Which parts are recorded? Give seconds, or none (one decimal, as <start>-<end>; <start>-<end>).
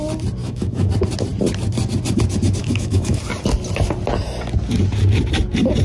0.0-0.4; 0.9-2.6; 3.2-5.8